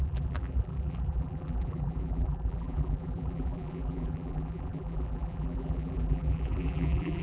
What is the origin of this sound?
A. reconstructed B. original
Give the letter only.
A